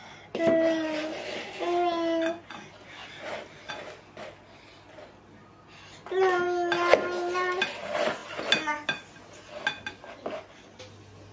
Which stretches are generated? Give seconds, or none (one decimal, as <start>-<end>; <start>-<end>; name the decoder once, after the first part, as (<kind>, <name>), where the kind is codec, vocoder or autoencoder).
none